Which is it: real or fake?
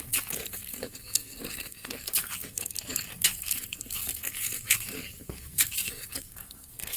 fake